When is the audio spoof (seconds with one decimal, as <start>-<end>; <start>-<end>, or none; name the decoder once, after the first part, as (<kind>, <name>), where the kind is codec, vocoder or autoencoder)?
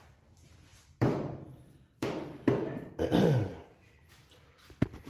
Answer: 0.7-3.8 (vocoder, BigVGAN v2)